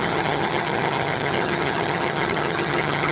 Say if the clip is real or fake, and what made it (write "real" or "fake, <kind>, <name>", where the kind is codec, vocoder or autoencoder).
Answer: fake, vocoder, HiFi-GAN